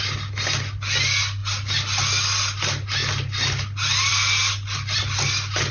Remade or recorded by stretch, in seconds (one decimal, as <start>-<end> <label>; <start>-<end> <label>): 0.0-5.7 recorded